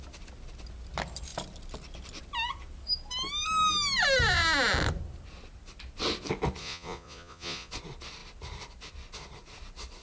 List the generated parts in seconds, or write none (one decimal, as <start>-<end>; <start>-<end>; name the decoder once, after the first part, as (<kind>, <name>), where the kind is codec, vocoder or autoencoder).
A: 6.6-7.7 (vocoder, Vocos)